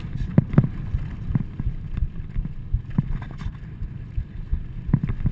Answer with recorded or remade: recorded